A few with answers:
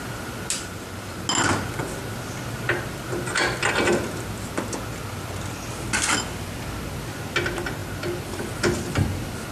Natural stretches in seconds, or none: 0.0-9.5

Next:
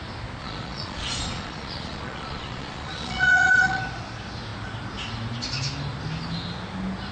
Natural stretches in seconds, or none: 0.0-0.4; 3.8-7.1

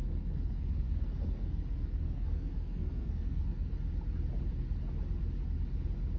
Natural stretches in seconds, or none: 3.7-6.2

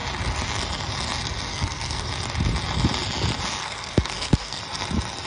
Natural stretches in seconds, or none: 0.0-1.5; 2.1-3.6; 4.6-5.3